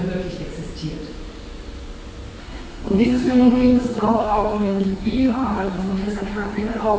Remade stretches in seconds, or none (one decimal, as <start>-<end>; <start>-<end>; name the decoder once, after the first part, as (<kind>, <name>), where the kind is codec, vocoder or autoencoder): 2.4-7.0 (codec, SNAC)